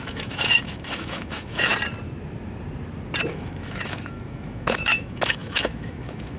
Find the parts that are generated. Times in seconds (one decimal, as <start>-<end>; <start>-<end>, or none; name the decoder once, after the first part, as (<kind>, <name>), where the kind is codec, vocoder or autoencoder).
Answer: 0.0-1.7 (autoencoder, DAC-VAE); 3.3-6.4